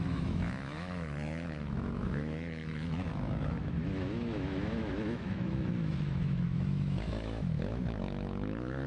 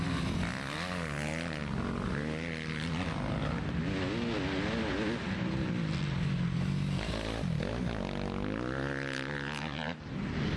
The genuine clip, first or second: second